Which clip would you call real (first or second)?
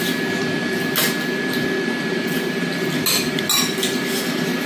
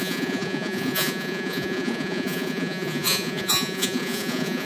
first